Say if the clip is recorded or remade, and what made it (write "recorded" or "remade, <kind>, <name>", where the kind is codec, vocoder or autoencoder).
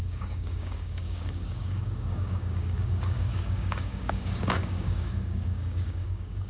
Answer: remade, codec, DAC